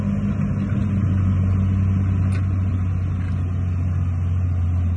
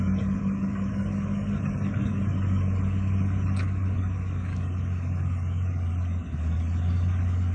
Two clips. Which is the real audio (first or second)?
first